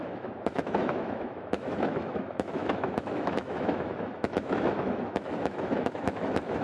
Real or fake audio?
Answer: fake